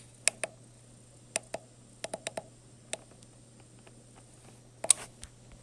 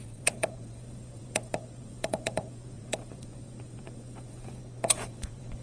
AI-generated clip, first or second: second